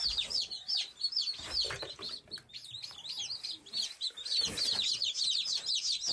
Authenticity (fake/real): real